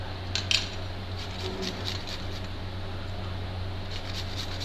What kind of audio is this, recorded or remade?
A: recorded